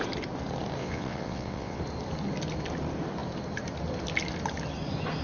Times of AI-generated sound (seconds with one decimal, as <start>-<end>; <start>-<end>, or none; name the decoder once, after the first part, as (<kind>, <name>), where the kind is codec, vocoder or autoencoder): 0.8-1.8 (vocoder, WaveNeXt)